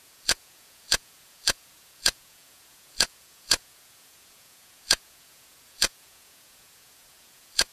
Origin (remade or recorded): remade